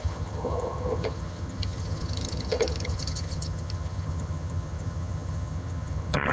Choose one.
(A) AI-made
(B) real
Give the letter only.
A